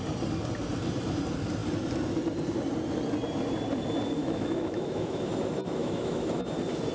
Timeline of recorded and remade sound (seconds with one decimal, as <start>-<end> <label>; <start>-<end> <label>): 0.0-4.2 recorded; 4.2-5.3 remade; 5.3-5.8 recorded; 5.8-6.4 remade; 6.4-6.9 recorded